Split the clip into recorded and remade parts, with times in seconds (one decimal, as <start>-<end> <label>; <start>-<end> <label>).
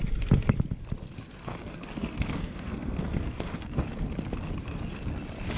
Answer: 0.0-1.4 recorded; 1.4-3.8 remade; 3.8-5.6 recorded